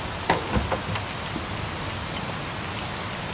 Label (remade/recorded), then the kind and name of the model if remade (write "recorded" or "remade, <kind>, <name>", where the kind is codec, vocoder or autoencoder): recorded